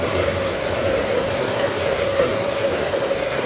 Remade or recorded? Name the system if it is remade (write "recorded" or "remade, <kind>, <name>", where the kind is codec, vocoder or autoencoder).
remade, codec, SNAC